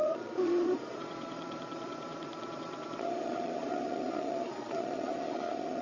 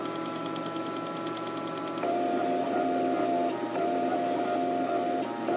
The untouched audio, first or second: second